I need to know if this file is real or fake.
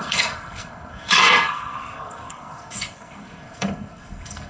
fake